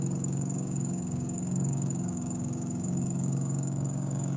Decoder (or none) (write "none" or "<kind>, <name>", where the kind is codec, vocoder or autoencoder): codec, DAC